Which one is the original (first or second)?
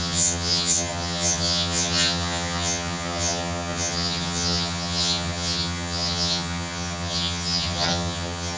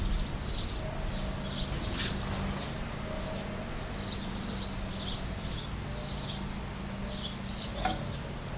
second